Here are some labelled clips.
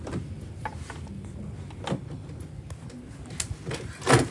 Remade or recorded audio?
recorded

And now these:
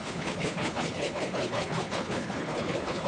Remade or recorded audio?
remade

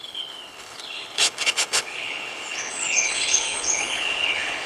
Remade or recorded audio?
remade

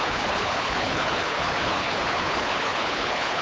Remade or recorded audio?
remade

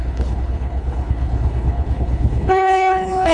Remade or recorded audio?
remade